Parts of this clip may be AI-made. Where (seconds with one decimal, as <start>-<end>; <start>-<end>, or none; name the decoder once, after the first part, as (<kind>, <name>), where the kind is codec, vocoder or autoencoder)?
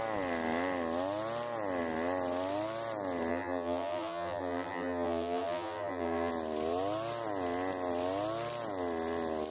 3.3-6.3 (vocoder, BigVGAN v2)